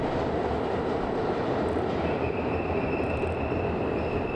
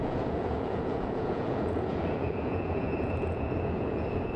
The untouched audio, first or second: first